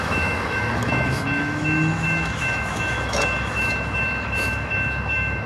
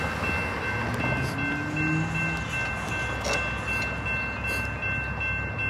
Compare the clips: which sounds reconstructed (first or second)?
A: first